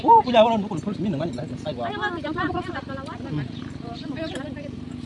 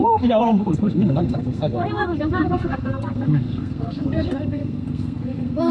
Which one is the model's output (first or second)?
second